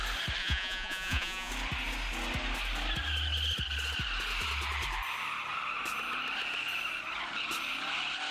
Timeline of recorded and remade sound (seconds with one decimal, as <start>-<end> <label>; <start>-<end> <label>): 0.0-0.4 recorded; 0.4-1.5 remade; 1.5-8.3 recorded